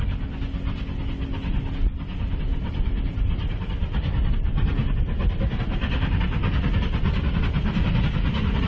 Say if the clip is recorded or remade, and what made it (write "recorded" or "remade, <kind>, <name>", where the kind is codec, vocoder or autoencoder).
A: recorded